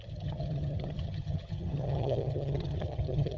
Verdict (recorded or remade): remade